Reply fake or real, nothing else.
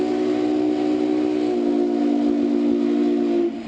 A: real